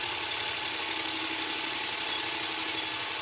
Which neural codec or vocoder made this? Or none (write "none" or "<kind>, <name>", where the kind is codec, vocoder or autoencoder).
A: none